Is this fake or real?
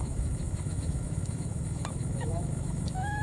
fake